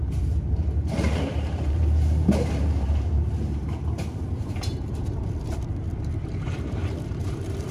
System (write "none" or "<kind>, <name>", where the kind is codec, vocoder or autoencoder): vocoder, BigVGAN v2